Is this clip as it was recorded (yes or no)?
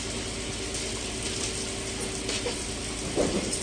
no